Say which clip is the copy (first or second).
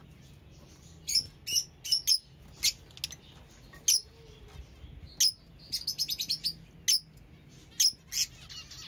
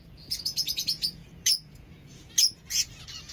second